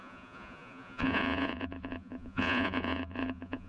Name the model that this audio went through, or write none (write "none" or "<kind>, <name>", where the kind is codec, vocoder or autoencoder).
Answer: vocoder, Vocos